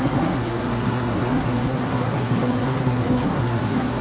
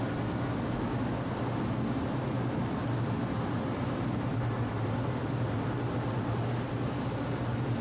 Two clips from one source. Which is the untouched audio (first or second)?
second